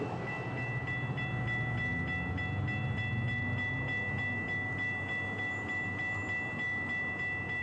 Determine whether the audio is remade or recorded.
recorded